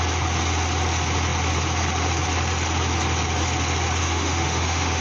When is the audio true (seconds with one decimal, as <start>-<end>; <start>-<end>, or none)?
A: 0.0-4.0